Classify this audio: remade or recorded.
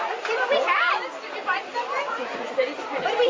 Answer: recorded